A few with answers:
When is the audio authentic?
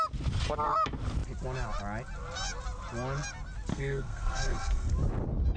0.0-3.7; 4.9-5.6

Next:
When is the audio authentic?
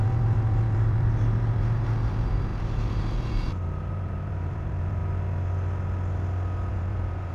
5.0-6.7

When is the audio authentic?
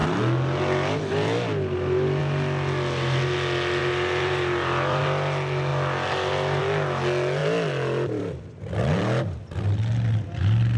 0.0-3.8; 5.0-7.4; 9.6-10.8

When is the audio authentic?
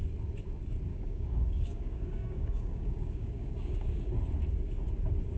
0.0-0.9; 4.1-5.4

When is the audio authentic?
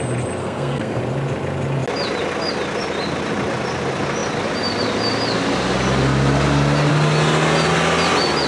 0.0-0.4; 1.0-8.5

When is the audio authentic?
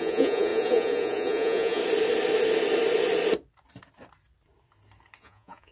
1.8-5.2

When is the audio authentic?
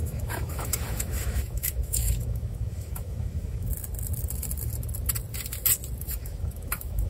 3.7-6.0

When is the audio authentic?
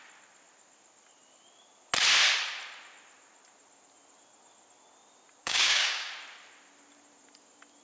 0.0-5.4; 6.1-7.8